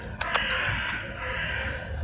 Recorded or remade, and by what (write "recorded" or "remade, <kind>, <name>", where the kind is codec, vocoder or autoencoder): recorded